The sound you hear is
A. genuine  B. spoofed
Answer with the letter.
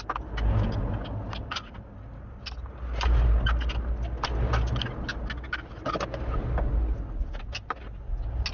A